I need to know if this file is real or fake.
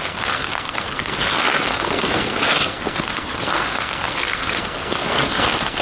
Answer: fake